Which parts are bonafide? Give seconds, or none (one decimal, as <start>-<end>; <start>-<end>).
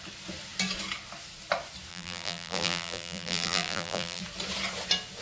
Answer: 0.0-1.9; 4.2-5.2